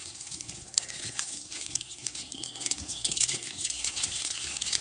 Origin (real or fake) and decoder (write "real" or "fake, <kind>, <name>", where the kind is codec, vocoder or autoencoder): fake, codec, SNAC